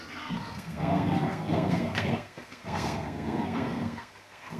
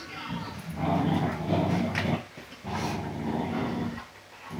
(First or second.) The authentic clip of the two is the second